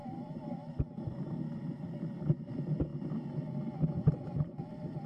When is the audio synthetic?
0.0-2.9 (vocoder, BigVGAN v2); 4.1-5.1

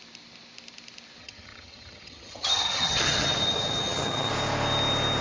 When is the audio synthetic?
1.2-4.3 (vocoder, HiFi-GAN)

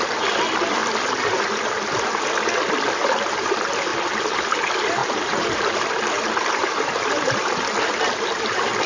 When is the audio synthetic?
5.0-7.5 (vocoder, BigVGAN v2)